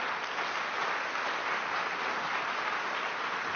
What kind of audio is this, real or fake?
real